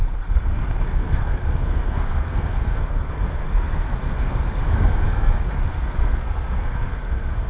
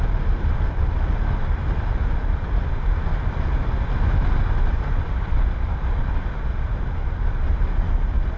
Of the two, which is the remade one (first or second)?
first